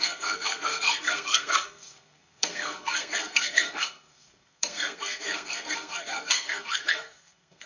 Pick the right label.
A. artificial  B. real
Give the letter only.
A